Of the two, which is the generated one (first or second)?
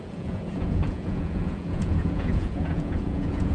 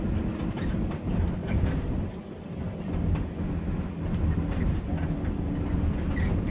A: first